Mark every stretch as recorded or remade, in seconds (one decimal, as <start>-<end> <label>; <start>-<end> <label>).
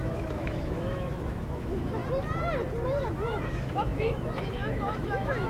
0.0-2.0 remade; 2.0-3.0 recorded; 3.0-5.5 remade